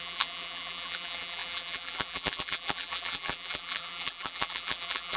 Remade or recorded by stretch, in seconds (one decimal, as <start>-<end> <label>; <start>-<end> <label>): 0.0-5.2 remade